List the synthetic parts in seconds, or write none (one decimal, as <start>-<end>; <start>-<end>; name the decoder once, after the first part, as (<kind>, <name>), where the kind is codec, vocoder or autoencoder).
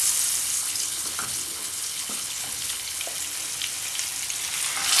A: 0.5-3.0 (codec, HILCodec)